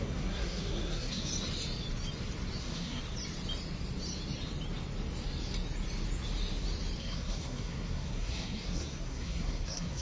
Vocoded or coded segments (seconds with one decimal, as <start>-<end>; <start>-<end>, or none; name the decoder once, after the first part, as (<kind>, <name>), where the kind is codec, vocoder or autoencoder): 0.0-1.3 (codec, SNAC); 2.6-3.0; 7.0-10.0